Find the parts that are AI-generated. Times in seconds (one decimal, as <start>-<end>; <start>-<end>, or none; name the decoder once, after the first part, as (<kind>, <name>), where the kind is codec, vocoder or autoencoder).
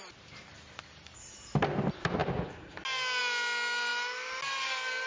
none